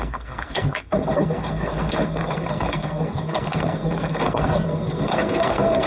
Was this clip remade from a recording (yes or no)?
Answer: yes